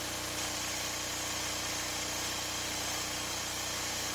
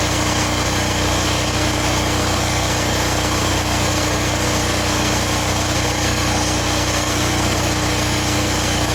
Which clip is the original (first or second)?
first